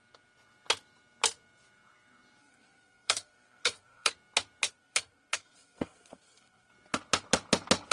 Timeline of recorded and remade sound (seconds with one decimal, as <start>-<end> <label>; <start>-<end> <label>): 0.0-2.4 recorded; 2.4-4.1 remade; 4.1-4.7 recorded; 4.7-6.7 remade; 6.7-7.9 recorded